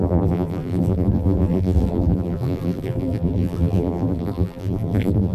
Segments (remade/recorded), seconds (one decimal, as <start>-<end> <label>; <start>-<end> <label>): 0.0-5.3 remade